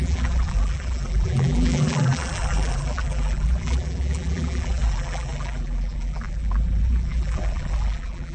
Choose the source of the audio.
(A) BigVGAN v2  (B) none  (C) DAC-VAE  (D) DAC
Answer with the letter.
A